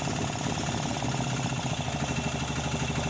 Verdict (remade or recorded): recorded